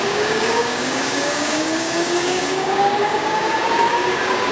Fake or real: fake